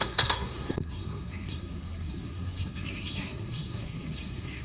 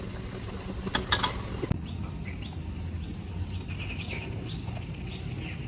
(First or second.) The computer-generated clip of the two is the first